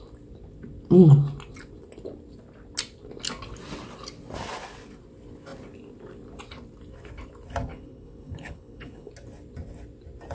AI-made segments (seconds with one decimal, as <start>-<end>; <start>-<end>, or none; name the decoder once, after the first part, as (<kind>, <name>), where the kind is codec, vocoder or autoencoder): 7.7-9.1 (codec, HILCodec)